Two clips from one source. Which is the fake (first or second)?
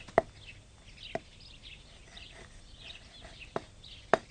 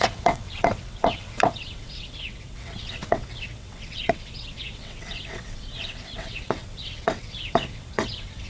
second